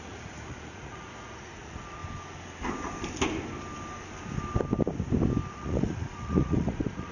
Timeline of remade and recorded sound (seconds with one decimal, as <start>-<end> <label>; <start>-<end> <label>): 0.0-2.0 remade; 2.0-5.5 recorded; 5.5-7.1 remade